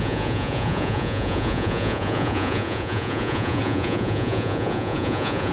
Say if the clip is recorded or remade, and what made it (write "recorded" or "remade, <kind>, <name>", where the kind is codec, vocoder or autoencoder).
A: remade, vocoder, Vocos